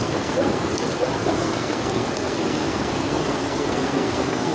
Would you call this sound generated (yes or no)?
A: yes